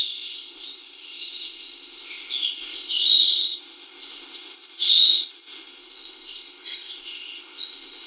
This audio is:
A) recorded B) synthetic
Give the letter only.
B